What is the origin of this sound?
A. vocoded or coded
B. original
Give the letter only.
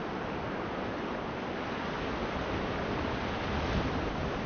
B